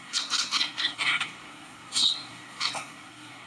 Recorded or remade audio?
remade